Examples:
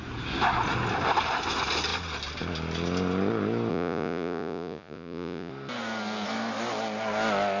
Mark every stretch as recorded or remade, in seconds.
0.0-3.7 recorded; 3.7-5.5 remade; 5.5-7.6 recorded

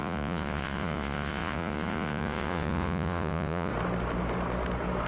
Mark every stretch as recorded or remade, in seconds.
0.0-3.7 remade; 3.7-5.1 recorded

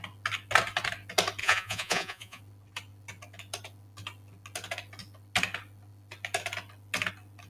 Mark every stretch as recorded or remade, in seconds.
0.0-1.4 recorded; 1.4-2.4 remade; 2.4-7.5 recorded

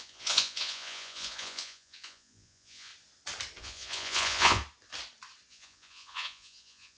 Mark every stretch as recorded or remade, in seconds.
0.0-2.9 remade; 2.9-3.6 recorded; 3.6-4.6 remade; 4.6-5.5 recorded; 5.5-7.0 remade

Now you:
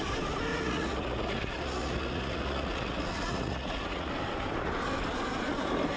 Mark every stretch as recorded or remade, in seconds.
0.0-0.5 recorded; 0.5-4.1 remade; 4.1-6.0 recorded

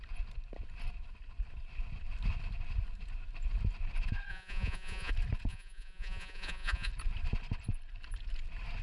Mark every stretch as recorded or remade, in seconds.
0.0-4.3 recorded; 4.3-5.1 remade; 5.1-5.5 recorded; 5.5-6.9 remade; 6.9-8.8 recorded